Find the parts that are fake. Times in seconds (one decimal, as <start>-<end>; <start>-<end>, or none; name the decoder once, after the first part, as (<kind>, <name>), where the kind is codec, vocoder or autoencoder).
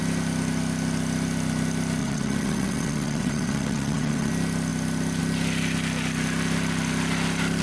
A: 2.0-4.3 (vocoder, WaveNeXt)